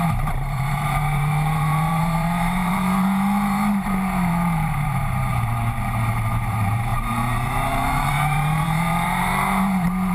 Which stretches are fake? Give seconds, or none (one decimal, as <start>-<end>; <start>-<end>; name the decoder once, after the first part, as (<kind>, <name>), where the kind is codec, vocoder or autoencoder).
0.0-10.1 (vocoder, BigVGAN v2)